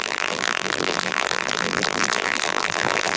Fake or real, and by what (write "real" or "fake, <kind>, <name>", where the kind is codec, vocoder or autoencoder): fake, vocoder, BigVGAN v2